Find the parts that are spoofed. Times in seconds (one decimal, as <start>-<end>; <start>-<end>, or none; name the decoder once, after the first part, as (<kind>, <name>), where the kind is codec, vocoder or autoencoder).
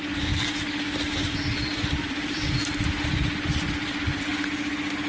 1.2-4.3 (vocoder, BigVGAN v2)